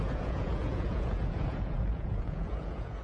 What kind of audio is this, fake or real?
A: fake